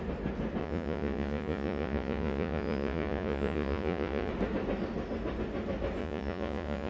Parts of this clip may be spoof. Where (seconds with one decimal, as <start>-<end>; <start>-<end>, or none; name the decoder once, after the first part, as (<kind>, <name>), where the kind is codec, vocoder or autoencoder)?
0.6-4.3 (vocoder, Vocos); 6.0-6.9